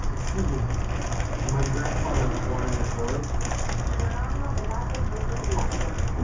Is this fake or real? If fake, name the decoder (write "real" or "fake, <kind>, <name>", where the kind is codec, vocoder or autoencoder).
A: real